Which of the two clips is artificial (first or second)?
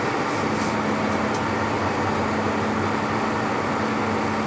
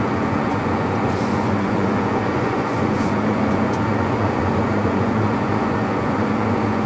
second